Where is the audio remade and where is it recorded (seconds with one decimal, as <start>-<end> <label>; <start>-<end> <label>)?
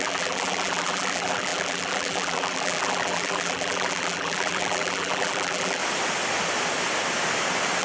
0.0-5.8 remade; 5.8-7.8 recorded